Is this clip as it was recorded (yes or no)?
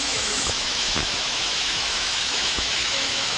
no